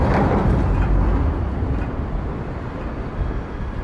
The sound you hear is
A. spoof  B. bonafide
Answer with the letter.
B